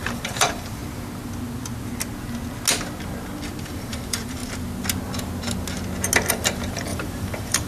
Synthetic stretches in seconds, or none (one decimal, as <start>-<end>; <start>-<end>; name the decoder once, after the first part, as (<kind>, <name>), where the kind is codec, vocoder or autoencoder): 0.0-0.8 (vocoder, BigVGAN v2); 3.6-4.4; 6.3-7.7